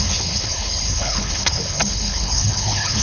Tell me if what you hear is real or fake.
fake